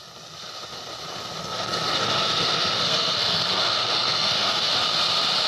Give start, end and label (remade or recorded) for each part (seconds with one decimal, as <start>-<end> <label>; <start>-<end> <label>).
0.0-1.4 recorded; 1.4-4.7 remade; 4.7-5.5 recorded